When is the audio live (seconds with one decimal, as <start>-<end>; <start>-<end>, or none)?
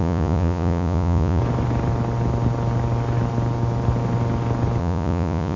1.4-4.8